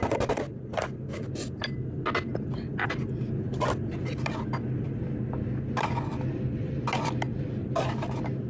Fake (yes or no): no